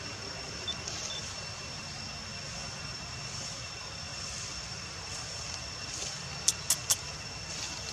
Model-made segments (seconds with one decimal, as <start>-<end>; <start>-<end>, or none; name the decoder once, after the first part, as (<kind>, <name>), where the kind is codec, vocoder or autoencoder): 1.2-2.0 (vocoder, BigVGAN v2)